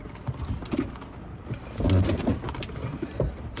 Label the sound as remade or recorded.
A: recorded